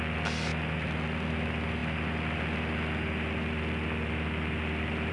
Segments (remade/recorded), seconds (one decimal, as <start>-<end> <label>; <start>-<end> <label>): 0.0-5.1 recorded